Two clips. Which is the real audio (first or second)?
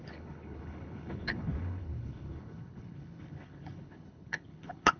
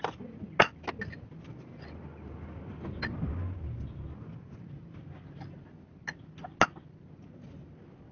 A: second